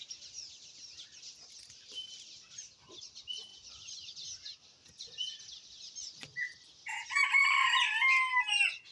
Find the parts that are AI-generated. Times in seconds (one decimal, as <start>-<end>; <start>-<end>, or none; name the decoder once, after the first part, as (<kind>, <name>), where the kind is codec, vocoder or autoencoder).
3.5-4.2 (vocoder, Vocos)